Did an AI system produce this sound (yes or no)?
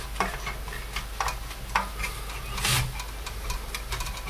no